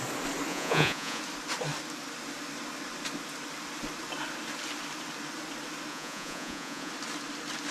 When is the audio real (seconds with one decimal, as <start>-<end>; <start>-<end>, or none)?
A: 0.0-0.5; 1.2-5.9; 6.9-7.7